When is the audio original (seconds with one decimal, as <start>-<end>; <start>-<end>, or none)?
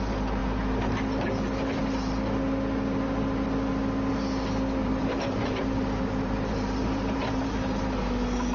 0.0-4.8; 7.8-8.5